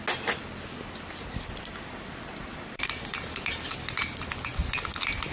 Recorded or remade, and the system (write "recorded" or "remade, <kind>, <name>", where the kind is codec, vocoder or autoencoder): recorded